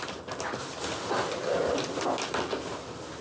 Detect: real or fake real